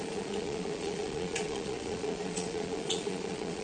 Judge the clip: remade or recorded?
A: remade